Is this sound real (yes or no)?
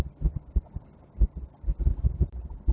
yes